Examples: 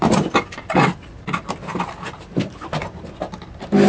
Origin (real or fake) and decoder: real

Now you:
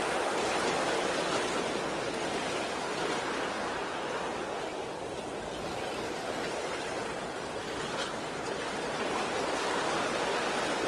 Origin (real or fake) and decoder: real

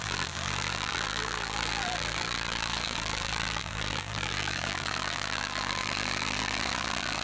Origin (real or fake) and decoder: fake, vocoder, BigVGAN v2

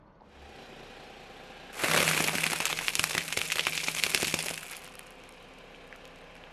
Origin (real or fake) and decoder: real